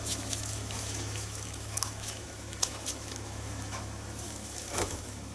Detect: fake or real fake